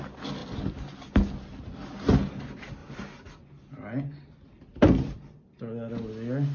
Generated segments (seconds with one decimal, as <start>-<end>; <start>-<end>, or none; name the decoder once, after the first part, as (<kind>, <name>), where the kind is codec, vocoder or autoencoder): 2.8-5.4 (vocoder, BigVGAN v2)